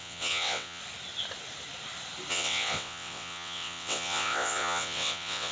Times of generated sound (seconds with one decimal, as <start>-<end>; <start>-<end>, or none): 0.0-0.8; 2.3-5.5

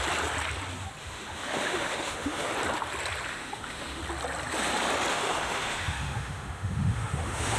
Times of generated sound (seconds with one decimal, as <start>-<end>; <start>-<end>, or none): 1.0-2.5; 3.3-4.0; 5.1-7.6

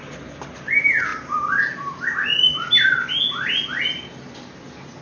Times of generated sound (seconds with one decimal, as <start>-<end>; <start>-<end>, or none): none

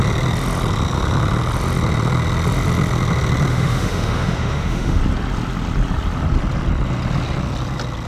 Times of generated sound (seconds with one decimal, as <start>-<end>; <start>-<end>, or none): 3.5-5.0

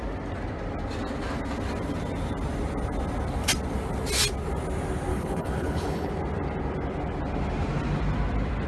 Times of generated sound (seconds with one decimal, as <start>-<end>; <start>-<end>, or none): 5.1-6.1

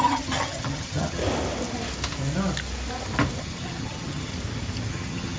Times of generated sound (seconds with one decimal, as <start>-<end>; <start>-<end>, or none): 0.0-1.2; 3.4-4.3; 4.9-5.4

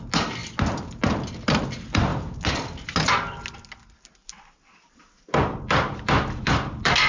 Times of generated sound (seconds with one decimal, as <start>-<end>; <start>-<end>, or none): 4.2-7.1